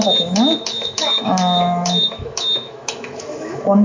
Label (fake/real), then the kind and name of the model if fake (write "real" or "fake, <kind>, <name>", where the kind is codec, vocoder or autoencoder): fake, autoencoder, DAC-VAE